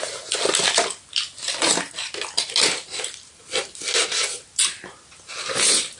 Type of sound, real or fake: real